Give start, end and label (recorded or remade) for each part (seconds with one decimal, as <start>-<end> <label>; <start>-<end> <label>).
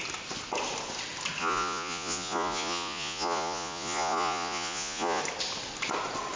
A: 0.0-1.4 recorded; 1.4-5.2 remade; 5.2-6.4 recorded